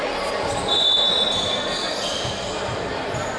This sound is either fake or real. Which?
real